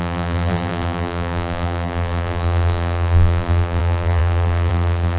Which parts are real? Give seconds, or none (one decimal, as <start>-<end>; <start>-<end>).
none